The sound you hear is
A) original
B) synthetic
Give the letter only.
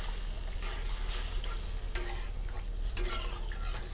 A